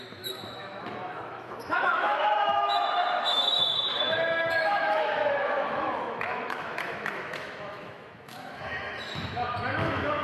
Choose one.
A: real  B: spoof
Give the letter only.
B